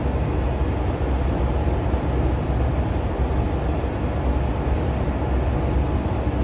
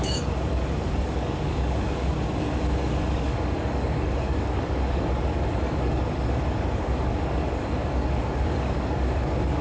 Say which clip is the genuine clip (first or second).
first